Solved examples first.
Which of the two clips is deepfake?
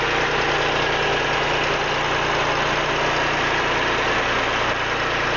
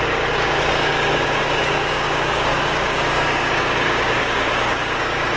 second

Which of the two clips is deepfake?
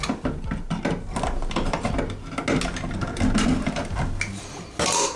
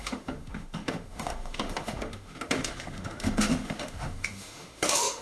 second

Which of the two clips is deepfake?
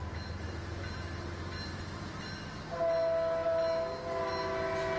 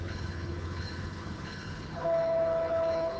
second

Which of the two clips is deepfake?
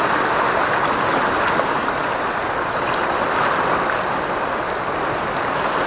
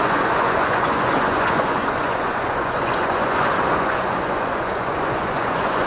second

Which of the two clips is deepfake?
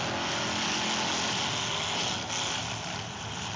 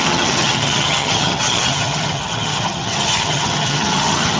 second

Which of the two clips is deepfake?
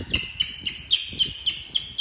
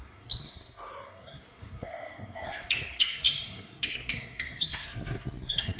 second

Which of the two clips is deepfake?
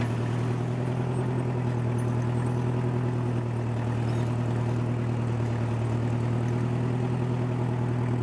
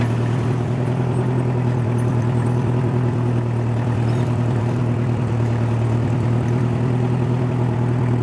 second